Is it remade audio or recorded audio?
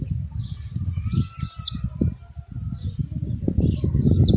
recorded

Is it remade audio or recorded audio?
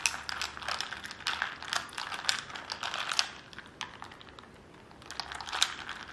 recorded